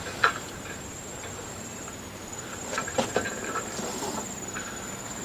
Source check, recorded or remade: remade